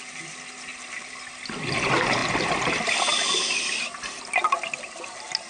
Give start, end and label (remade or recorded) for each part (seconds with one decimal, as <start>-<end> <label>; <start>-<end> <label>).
0.0-5.5 recorded